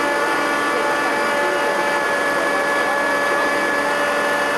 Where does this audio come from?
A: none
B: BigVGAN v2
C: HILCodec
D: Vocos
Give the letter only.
A